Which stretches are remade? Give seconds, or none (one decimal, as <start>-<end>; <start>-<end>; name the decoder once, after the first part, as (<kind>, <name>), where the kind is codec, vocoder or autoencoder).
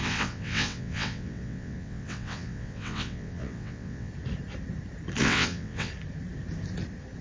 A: 0.0-4.1 (vocoder, WaveNeXt); 5.2-5.9